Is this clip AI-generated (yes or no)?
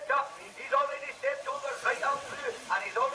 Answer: yes